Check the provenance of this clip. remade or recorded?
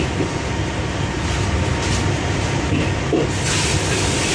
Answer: recorded